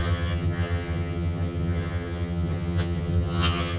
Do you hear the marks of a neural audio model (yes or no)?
yes